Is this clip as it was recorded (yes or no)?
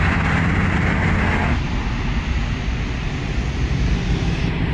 yes